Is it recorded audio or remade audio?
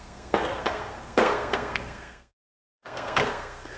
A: remade